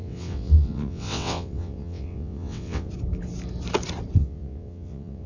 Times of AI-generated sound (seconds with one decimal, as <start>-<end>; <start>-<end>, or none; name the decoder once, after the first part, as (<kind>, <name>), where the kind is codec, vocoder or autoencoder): 0.0-2.9 (vocoder, WaveNeXt); 4.2-5.3